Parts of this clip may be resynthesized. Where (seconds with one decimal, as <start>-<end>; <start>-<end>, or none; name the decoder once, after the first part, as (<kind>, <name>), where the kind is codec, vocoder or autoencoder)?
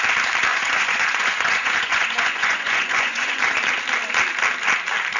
0.5-3.4 (vocoder, Vocos)